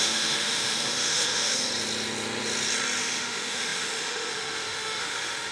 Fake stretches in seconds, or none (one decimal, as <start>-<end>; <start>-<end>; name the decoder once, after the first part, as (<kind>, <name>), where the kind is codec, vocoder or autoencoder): 0.0-1.7 (autoencoder, DAC-VAE); 3.0-5.5